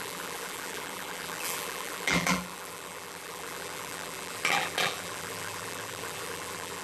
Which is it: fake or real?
fake